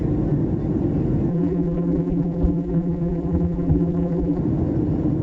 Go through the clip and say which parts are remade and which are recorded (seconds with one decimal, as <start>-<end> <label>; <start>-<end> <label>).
0.0-1.3 recorded; 1.3-4.4 remade; 4.4-5.2 recorded